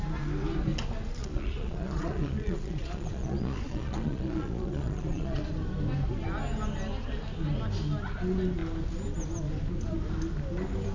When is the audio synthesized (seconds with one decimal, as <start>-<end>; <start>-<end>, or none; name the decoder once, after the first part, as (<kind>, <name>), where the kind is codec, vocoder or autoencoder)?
1.2-5.4 (vocoder, Vocos)